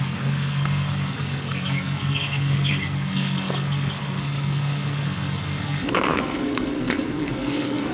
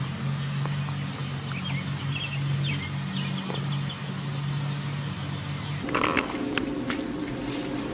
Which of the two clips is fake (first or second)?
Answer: first